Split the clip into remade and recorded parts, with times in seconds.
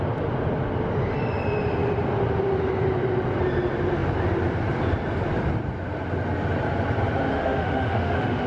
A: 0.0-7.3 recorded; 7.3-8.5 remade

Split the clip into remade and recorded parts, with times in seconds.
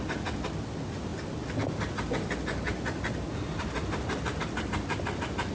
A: 0.0-5.5 recorded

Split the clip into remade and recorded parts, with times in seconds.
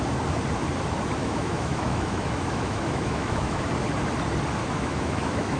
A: 0.0-1.2 recorded; 1.2-3.6 remade; 3.6-4.6 recorded; 4.6-5.6 remade